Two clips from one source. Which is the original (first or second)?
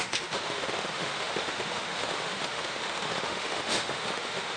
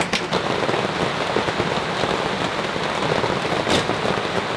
second